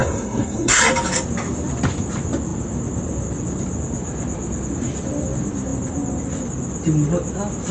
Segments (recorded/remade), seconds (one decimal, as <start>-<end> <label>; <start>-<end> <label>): 0.0-0.8 remade; 0.8-7.7 recorded